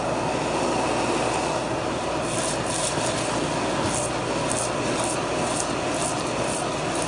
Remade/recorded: recorded